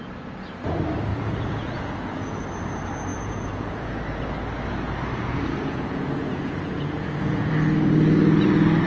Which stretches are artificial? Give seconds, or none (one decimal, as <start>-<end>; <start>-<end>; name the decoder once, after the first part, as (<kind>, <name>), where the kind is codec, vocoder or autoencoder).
1.1-2.4 (vocoder, Vocos); 3.1-3.9; 5.1-7.5